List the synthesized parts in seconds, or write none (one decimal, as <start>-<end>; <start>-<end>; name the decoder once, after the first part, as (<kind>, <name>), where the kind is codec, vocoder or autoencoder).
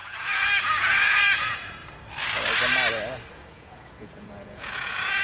0.0-1.8 (vocoder, Vocos); 3.3-5.2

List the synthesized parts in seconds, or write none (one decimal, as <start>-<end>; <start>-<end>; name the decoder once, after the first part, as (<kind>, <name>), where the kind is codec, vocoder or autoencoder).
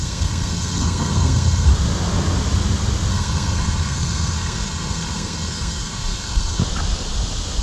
0.0-1.7 (codec, SNAC); 3.1-6.6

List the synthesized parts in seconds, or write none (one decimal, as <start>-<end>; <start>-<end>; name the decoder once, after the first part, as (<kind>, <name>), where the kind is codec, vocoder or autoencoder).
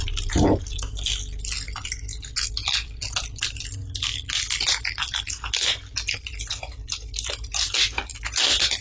none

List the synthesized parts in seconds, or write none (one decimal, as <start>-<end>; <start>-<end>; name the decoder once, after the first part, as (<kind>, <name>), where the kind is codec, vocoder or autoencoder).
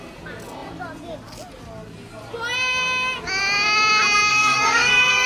4.3-5.3 (codec, SNAC)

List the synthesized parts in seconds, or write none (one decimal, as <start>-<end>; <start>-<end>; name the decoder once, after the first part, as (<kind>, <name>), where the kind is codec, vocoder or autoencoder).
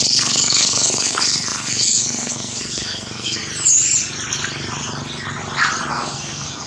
0.0-3.4 (codec, SNAC); 5.9-6.7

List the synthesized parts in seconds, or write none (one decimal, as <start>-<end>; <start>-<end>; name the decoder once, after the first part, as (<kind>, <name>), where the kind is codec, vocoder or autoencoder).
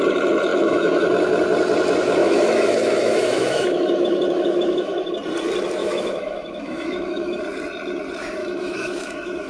0.5-1.0 (autoencoder, DAC-VAE); 2.2-5.1; 5.8-7.4; 8.4-9.5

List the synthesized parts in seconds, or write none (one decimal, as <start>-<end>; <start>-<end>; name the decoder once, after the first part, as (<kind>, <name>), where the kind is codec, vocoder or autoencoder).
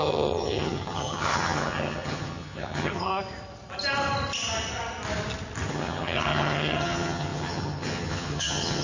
0.0-3.1 (vocoder, HiFi-GAN); 5.7-8.8